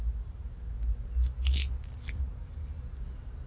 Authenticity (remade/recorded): recorded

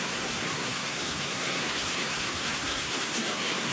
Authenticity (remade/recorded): remade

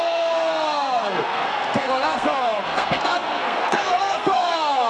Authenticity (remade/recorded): remade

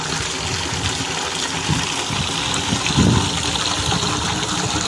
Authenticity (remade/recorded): recorded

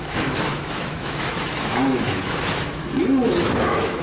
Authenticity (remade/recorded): remade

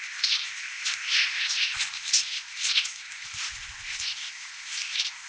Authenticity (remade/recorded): remade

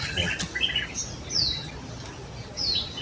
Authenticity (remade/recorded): recorded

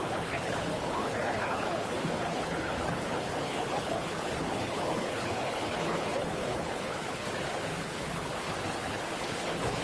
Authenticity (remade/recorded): remade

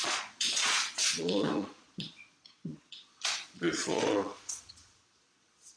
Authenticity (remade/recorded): remade